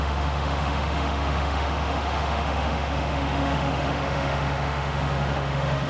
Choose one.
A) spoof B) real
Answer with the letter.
A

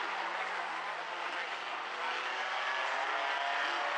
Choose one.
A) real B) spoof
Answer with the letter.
A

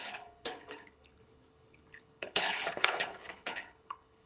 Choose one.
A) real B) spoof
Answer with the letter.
B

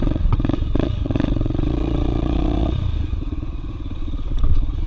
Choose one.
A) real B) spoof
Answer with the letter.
B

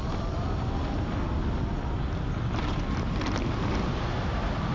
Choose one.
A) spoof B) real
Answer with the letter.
B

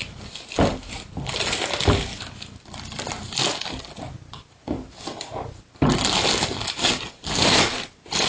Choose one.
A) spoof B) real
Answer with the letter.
B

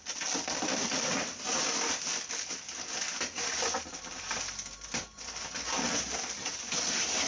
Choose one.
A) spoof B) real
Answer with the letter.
B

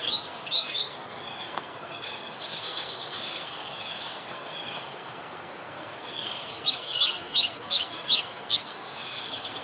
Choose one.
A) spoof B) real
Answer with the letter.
A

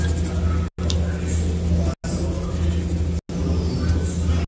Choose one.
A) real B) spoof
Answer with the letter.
A